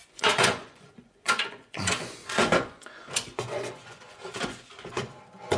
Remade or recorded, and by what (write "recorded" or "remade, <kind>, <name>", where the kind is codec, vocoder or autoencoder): remade, vocoder, Vocos